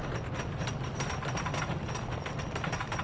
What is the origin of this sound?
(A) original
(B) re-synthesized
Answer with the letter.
A